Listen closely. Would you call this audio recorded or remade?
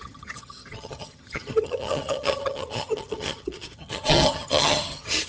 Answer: remade